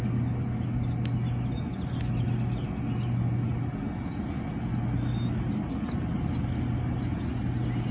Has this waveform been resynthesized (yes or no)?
no